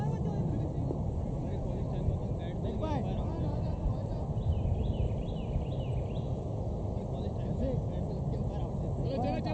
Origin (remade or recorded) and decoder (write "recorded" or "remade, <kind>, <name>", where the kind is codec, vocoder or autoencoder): recorded